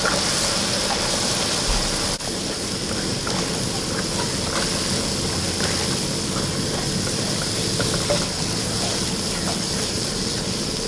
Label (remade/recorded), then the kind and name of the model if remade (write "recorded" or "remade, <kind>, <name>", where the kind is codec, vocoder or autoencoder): recorded